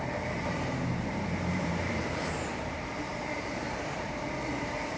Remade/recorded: remade